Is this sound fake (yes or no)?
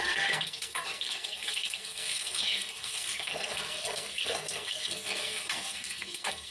yes